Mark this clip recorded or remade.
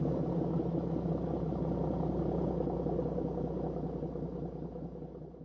recorded